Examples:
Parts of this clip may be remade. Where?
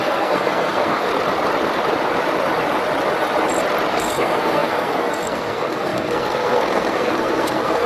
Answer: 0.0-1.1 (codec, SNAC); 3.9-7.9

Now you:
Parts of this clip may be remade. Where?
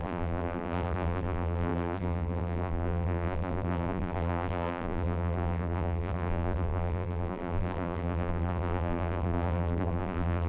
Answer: 0.0-10.5 (vocoder, BigVGAN v2)